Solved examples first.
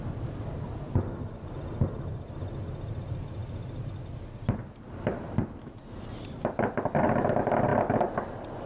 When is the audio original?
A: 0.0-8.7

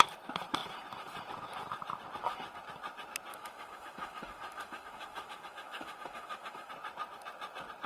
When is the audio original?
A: 0.0-3.3; 6.7-7.9

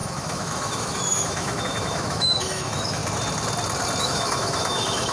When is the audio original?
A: 3.0-4.0

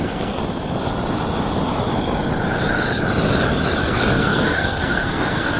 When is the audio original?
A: 0.4-3.8

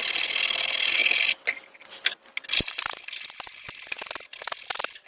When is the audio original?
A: 0.0-5.1

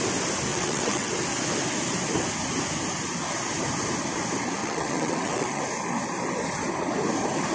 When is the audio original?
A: 0.0-0.5; 1.1-4.6; 5.6-7.5

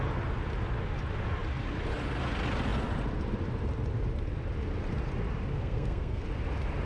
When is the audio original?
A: 0.0-5.5; 6.2-6.9